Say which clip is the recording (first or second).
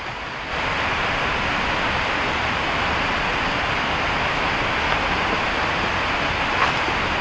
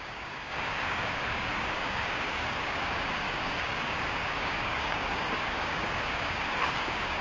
first